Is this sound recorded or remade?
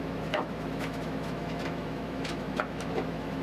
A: remade